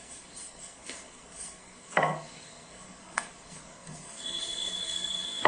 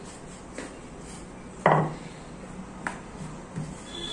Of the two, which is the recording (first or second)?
second